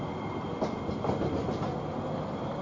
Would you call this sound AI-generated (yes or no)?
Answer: no